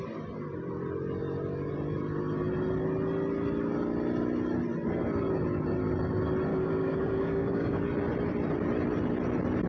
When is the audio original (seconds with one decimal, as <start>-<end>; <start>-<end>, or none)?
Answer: 0.0-6.5; 7.8-9.7